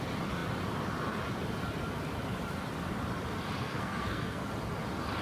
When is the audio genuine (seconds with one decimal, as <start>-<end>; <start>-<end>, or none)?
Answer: 0.0-3.6; 4.5-5.2